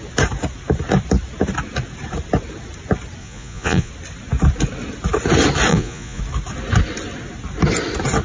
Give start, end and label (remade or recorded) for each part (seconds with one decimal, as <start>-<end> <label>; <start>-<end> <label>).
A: 0.0-3.2 recorded; 3.2-3.9 remade; 3.9-5.7 recorded; 5.7-6.2 remade; 6.2-8.2 recorded